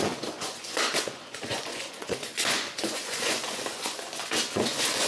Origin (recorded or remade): remade